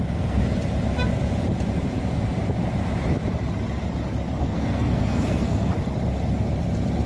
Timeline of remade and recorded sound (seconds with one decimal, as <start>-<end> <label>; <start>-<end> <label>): 0.0-0.4 remade; 0.4-4.4 recorded; 4.4-5.7 remade; 5.7-7.1 recorded